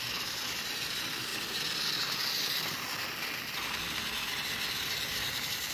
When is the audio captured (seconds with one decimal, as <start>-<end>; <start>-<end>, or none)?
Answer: 1.3-4.7